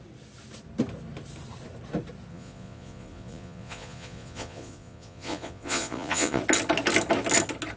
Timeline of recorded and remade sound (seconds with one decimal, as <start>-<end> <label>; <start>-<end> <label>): 0.0-2.3 recorded; 2.3-6.4 remade; 6.4-7.8 recorded